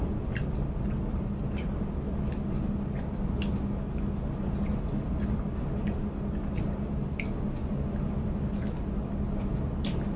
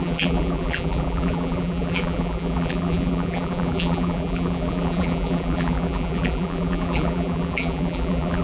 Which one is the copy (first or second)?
second